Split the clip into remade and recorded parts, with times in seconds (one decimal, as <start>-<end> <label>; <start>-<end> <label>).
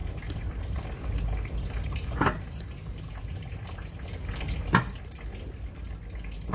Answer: 0.0-6.5 recorded